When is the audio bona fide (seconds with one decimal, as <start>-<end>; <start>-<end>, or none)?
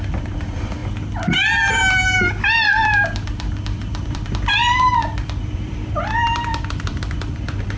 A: 0.8-2.4